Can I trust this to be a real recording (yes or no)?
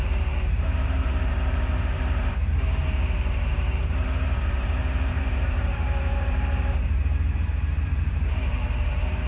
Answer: no